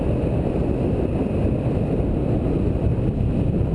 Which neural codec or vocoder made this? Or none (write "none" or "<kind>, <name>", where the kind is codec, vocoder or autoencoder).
none